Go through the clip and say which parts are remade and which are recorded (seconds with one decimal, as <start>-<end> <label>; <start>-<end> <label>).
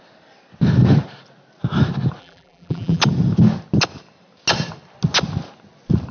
0.0-2.2 recorded; 2.2-3.0 remade; 3.0-6.1 recorded